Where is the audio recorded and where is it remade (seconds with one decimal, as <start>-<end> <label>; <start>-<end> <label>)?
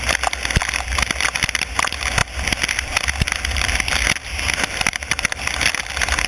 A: 0.0-6.3 recorded